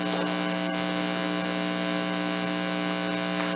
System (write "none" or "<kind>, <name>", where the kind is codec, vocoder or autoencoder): none